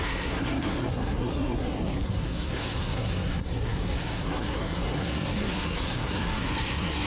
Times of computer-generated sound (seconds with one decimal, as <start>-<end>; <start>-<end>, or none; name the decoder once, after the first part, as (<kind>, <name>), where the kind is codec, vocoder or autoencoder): 0.0-7.1 (codec, SNAC)